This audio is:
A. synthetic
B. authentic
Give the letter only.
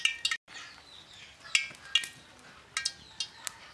B